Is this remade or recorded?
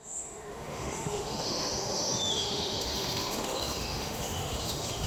remade